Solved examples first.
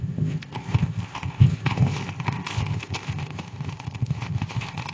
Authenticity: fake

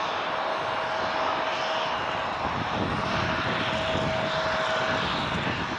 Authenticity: real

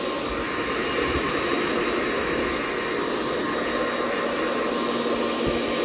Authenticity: real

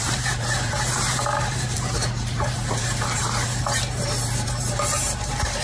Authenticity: fake